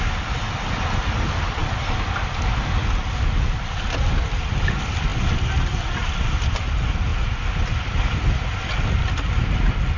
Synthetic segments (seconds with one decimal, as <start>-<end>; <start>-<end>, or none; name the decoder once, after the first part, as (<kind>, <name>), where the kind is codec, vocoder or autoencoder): none